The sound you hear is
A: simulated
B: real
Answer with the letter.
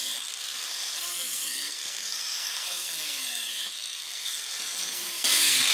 A